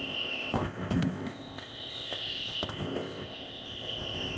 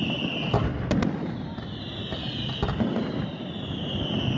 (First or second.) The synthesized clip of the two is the first